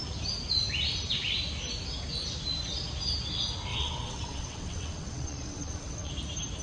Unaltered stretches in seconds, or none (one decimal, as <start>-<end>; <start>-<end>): 0.0-3.7; 6.1-6.6